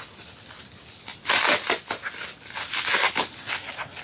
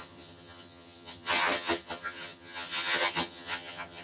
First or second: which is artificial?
second